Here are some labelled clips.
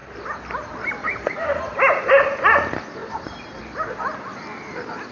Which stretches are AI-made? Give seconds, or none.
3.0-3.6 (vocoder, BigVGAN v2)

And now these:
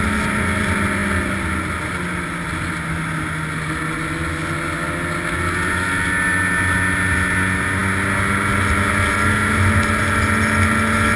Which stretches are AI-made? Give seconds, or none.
none

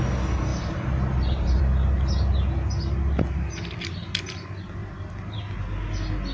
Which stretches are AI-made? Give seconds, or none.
0.5-1.6 (vocoder, BigVGAN v2); 4.8-5.4

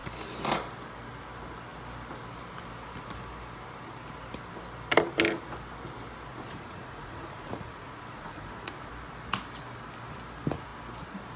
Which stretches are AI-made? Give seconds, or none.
6.3-8.9 (vocoder, Vocos)